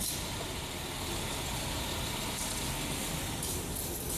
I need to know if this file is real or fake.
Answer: fake